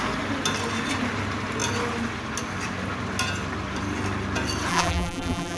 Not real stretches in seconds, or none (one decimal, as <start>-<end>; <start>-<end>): 4.7-5.6